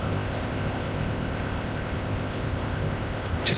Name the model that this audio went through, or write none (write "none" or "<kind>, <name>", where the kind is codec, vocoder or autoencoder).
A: codec, ZipCodec